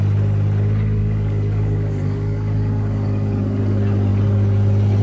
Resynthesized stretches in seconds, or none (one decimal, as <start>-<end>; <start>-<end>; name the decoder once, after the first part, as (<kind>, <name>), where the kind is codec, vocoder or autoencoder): 1.0-3.6 (codec, DAC)